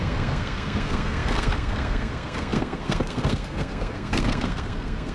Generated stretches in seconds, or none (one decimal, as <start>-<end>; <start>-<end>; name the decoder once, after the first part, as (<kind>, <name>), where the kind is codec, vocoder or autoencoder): 0.0-5.1 (codec, SNAC)